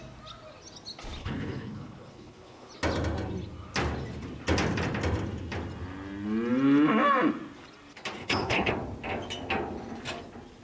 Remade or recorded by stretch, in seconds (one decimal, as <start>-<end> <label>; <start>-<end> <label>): 0.0-1.2 recorded; 1.2-2.7 remade; 2.7-8.2 recorded; 8.2-8.7 remade; 8.7-10.6 recorded